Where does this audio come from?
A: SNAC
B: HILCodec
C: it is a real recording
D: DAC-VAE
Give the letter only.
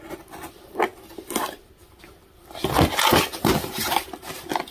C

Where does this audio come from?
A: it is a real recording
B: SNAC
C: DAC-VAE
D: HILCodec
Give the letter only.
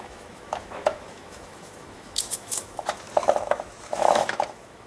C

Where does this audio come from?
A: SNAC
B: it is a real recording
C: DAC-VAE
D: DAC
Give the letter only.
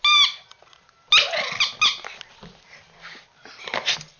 B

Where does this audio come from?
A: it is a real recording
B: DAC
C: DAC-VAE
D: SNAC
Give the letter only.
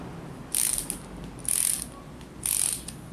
A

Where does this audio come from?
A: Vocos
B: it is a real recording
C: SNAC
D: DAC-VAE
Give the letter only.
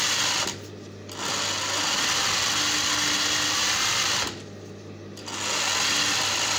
B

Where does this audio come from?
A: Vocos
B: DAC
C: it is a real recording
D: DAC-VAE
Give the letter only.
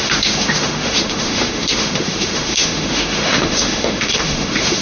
D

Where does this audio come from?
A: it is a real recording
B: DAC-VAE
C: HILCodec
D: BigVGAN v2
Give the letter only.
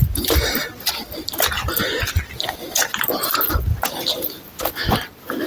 A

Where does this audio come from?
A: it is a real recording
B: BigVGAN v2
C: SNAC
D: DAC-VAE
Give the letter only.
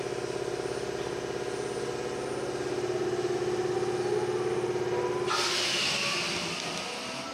A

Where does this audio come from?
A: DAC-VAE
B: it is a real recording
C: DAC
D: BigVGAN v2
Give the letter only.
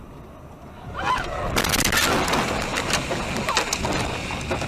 B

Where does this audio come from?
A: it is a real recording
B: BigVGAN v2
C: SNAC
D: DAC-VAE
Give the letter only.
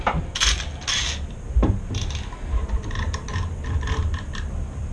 A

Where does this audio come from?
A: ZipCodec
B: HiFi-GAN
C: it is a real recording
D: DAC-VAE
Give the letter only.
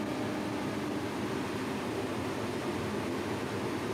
C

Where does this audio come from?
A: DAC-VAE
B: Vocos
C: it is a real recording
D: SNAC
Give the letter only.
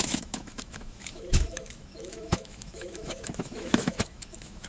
A